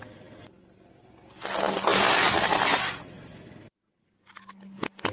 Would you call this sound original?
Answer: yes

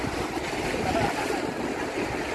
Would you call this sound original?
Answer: yes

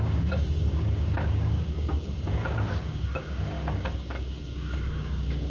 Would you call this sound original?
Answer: no